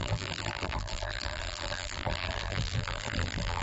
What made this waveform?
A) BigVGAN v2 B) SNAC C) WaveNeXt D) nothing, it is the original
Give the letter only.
A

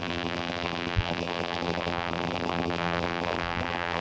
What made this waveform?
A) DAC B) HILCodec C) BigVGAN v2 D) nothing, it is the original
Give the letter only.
C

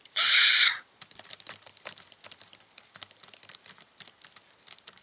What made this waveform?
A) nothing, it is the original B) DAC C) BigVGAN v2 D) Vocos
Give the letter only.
C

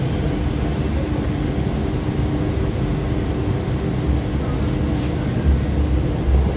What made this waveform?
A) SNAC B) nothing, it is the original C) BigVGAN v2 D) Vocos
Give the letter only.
B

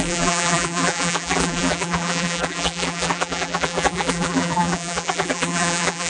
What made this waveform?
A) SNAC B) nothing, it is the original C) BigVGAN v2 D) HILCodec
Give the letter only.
C